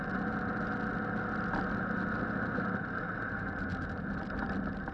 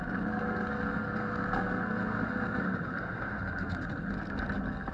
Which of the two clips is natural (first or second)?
first